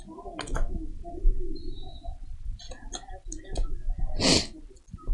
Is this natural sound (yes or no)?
yes